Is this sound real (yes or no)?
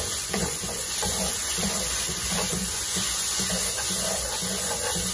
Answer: no